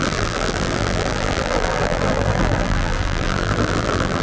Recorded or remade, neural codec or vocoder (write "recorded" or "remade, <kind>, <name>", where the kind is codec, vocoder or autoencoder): remade, vocoder, BigVGAN v2